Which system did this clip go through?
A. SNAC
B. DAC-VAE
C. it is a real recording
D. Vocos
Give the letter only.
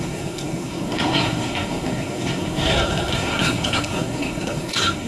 A